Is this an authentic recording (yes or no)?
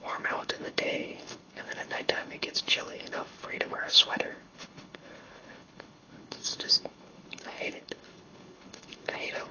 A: no